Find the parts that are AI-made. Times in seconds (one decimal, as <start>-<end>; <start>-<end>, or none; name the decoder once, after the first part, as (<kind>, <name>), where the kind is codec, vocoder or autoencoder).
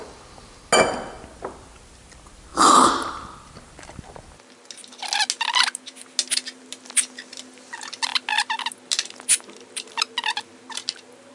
2.5-4.0 (vocoder, BigVGAN v2)